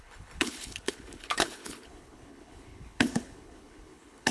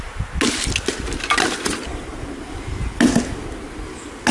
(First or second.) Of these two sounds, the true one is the second